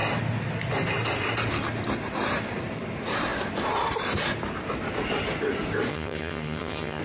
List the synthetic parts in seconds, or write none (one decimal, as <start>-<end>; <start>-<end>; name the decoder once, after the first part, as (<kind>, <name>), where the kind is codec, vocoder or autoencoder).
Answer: 5.9-7.0 (vocoder, HiFi-GAN)